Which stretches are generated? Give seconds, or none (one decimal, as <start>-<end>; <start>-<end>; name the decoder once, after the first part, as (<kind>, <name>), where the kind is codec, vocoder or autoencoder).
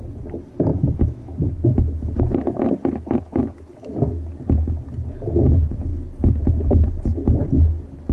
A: 0.7-4.3 (autoencoder, DAC-VAE)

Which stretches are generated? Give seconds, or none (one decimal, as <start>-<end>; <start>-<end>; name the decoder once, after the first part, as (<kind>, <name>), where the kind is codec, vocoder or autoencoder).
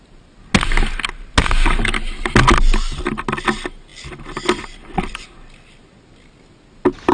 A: none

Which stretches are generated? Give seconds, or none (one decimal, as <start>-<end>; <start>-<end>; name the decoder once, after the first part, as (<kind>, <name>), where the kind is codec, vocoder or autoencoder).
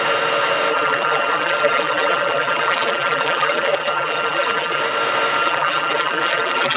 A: 0.7-4.8 (vocoder, BigVGAN v2); 5.4-6.8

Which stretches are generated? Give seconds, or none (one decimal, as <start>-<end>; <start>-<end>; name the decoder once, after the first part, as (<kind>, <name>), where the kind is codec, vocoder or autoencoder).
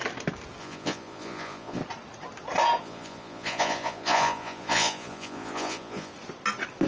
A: 0.6-1.8 (vocoder, Vocos); 2.8-6.1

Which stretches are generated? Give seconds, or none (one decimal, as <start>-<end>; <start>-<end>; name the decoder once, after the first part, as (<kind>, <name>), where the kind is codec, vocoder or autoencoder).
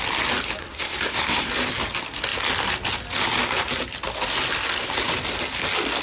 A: 0.6-1.5 (codec, SNAC)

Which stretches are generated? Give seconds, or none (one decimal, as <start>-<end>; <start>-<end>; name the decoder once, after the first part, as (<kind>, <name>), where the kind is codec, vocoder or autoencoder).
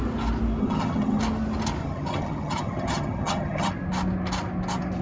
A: 0.6-1.2 (vocoder, HiFi-GAN); 1.8-3.7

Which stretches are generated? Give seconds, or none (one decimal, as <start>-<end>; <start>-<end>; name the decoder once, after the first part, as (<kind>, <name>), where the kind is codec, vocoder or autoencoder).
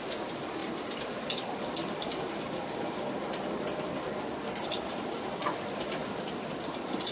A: none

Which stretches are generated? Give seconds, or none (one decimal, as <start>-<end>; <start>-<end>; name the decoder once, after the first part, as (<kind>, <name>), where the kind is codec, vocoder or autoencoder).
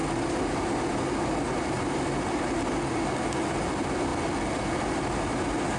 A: none